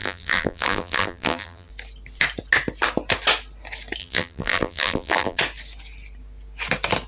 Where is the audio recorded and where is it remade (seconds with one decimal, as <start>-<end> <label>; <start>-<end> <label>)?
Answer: 0.0-1.7 remade; 1.7-4.0 recorded; 4.0-5.4 remade; 5.4-7.1 recorded

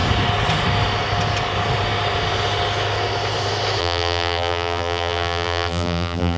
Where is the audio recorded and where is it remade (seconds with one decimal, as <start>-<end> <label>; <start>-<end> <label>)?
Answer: 0.0-3.8 recorded; 3.8-6.4 remade

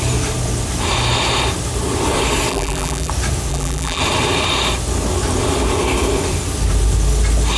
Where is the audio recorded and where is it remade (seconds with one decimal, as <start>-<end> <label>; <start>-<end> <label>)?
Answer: 0.0-2.5 recorded; 2.5-3.1 remade; 3.1-3.5 recorded; 3.5-4.0 remade; 4.0-7.6 recorded